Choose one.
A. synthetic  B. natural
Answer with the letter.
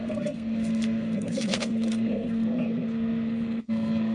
A